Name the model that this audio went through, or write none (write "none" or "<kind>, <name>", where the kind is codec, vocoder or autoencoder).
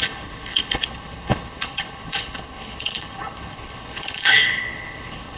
codec, HILCodec